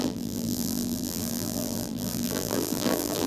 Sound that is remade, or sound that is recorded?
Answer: remade